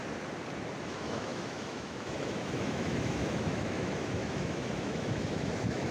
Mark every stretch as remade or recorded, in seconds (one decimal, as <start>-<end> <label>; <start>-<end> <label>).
0.0-0.8 recorded; 0.8-5.9 remade